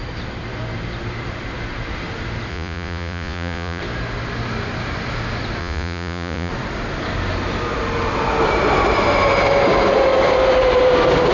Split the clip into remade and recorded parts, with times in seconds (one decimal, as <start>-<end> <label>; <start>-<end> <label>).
0.0-2.5 recorded; 2.5-3.8 remade; 3.8-5.6 recorded; 5.6-6.5 remade; 6.5-11.3 recorded